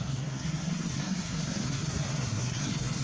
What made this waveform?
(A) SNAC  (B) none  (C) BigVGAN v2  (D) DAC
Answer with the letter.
A